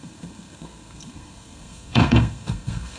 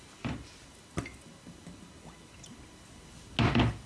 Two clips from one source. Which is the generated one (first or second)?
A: first